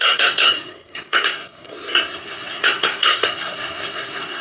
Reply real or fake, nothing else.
fake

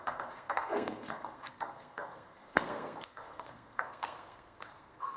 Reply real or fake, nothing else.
fake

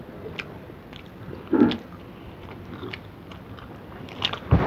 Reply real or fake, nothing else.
real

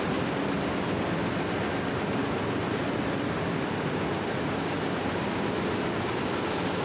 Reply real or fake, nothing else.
real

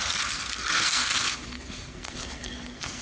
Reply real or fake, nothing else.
fake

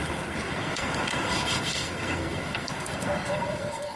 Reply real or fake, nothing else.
fake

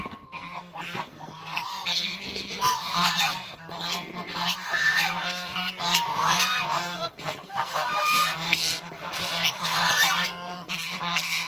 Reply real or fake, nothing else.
fake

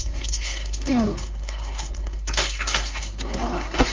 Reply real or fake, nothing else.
fake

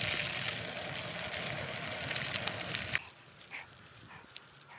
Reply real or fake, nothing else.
real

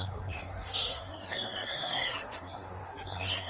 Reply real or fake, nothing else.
fake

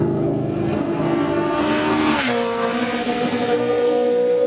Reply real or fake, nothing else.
fake